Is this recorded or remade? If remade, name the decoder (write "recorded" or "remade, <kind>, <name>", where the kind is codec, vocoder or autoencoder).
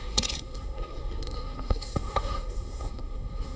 remade, codec, SNAC